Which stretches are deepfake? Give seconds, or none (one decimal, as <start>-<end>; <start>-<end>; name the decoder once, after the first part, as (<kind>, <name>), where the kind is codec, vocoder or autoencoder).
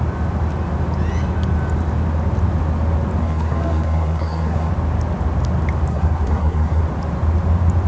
3.2-4.7 (codec, SNAC); 5.9-6.8